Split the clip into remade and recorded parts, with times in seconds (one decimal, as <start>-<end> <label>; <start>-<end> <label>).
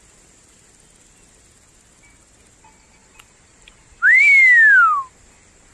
0.0-3.0 recorded; 3.0-4.2 remade; 4.2-5.7 recorded